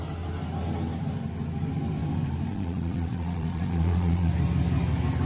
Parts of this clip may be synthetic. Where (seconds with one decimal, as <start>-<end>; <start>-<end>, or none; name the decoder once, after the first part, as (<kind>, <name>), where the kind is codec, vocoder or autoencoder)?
2.5-4.3 (vocoder, Vocos)